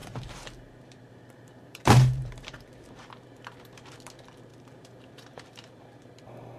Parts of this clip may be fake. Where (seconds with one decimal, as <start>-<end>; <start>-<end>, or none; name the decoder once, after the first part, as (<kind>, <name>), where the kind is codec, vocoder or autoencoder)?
0.0-3.9 (vocoder, BigVGAN v2); 4.5-5.8